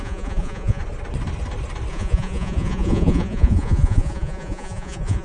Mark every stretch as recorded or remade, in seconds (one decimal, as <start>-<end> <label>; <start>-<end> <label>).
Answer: 0.0-0.8 remade; 0.8-1.9 recorded; 1.9-5.2 remade